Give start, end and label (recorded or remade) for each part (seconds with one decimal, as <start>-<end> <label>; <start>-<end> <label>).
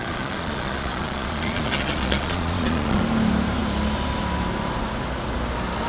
0.0-3.0 remade; 3.0-5.9 recorded